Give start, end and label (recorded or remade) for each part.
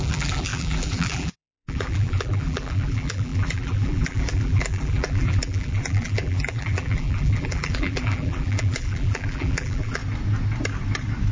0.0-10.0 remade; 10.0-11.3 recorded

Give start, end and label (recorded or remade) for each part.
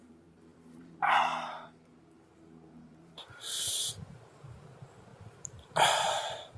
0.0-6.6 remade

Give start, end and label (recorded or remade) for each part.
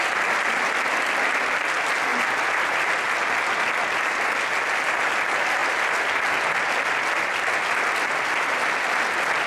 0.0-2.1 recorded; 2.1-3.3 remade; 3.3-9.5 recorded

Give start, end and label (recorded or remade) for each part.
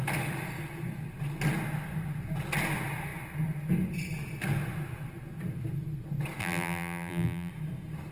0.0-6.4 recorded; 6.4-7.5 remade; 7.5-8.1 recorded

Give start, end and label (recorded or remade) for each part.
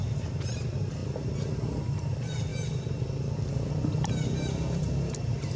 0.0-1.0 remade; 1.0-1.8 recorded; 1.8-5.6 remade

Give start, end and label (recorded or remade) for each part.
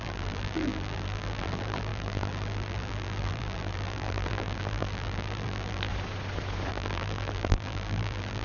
0.0-5.9 remade; 5.9-6.7 recorded; 6.7-8.4 remade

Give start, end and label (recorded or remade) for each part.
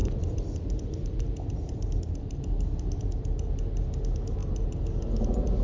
0.0-2.4 remade; 2.4-5.6 recorded